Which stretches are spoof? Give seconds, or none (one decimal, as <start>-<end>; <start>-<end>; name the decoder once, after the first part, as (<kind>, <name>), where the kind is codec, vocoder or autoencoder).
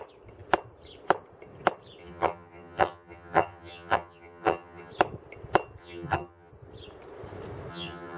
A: 2.0-4.9 (vocoder, HiFi-GAN); 5.8-6.5; 7.7-8.2